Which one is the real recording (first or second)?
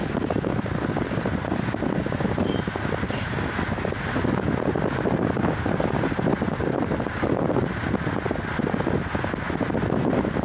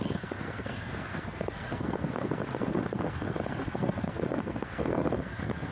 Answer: first